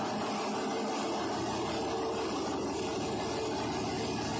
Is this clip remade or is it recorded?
recorded